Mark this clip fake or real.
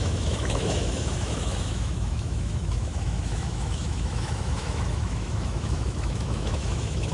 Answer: fake